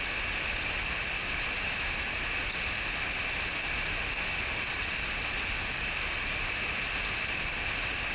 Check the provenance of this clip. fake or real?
real